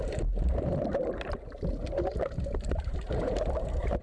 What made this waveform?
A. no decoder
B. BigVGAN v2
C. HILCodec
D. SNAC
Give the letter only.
B